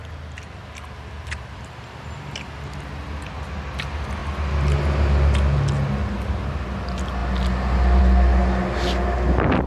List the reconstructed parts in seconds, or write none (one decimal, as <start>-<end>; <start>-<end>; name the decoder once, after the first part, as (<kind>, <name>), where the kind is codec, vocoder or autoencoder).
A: none